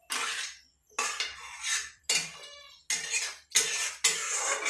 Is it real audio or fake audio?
real